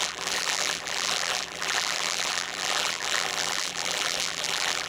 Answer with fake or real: fake